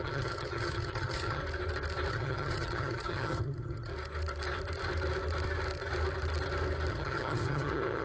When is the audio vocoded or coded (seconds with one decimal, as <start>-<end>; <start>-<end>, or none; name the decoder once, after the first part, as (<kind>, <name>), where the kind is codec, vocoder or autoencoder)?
0.0-1.4 (vocoder, HiFi-GAN); 2.1-3.9; 6.9-8.0